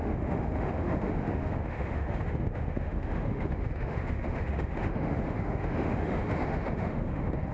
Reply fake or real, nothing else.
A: fake